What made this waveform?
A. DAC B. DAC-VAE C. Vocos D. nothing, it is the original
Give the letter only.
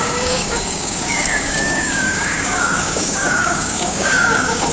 A